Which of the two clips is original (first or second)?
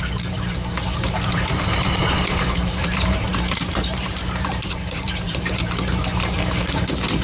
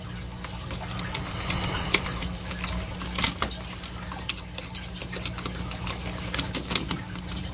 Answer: second